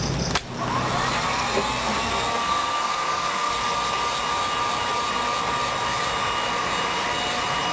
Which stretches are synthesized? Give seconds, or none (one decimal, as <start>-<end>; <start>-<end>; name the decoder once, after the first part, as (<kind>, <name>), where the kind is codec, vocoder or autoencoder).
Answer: 2.3-3.5 (codec, SNAC)